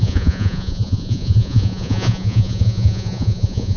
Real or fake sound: fake